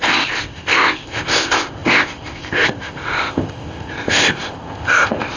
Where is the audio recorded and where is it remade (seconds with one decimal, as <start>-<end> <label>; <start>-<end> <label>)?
0.0-5.4 remade